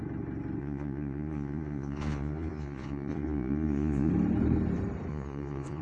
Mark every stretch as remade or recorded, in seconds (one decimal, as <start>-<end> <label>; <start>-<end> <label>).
0.0-0.6 recorded; 0.6-4.1 remade; 4.1-5.1 recorded; 5.1-5.8 remade

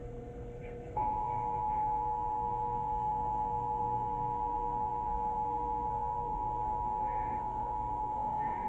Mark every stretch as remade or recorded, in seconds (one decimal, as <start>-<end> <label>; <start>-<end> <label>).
0.0-8.7 remade